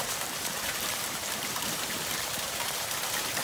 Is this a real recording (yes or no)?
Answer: no